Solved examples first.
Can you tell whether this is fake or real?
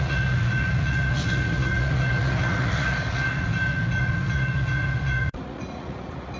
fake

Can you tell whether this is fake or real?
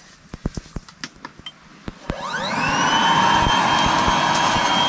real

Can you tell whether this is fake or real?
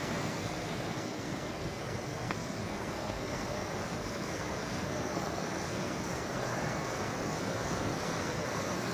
fake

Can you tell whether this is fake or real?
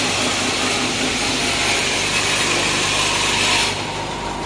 real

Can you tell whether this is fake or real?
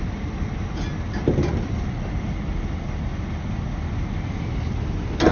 real